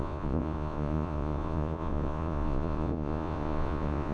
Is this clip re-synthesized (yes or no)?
yes